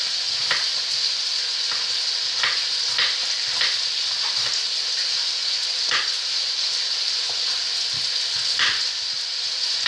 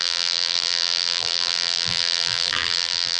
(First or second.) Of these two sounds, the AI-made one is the second